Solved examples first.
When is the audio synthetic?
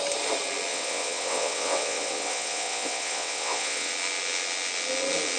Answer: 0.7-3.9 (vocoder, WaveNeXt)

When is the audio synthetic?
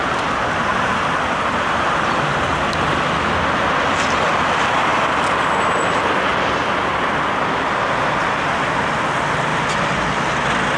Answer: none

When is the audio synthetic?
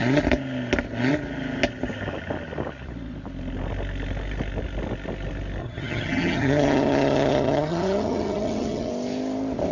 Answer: 5.6-8.9 (vocoder, HiFi-GAN)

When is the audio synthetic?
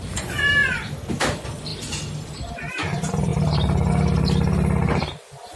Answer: none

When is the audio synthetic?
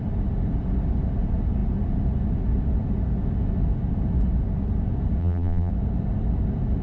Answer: 5.2-5.7 (vocoder, BigVGAN v2)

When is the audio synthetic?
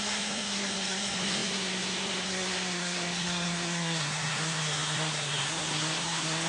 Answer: 0.0-6.5 (codec, SNAC)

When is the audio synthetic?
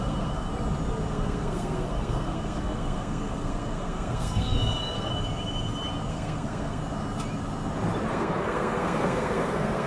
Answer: 0.0-0.5 (codec, SNAC); 1.1-5.1; 6.1-6.8; 8.1-9.9